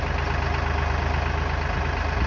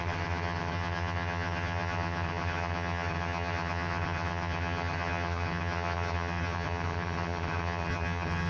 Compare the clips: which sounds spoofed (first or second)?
second